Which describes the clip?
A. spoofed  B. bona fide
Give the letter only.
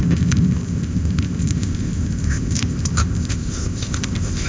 A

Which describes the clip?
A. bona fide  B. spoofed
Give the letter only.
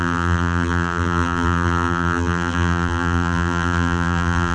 B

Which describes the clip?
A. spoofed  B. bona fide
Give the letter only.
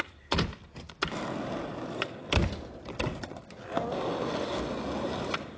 B